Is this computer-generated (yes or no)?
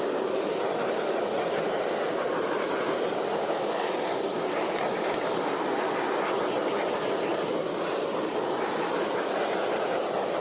no